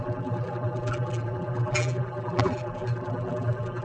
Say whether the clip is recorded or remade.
remade